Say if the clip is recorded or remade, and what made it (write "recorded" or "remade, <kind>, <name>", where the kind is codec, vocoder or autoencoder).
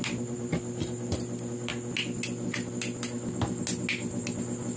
recorded